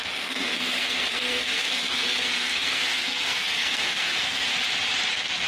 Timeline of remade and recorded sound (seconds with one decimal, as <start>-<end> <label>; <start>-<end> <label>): 0.0-4.5 remade; 4.5-5.1 recorded; 5.1-5.5 remade